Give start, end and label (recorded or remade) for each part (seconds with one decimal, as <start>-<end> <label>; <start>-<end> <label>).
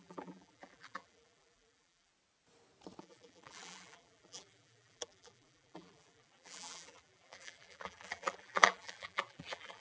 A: 0.0-2.1 remade; 2.1-3.0 recorded; 3.0-9.8 remade